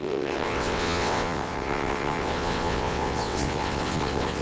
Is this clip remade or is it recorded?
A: remade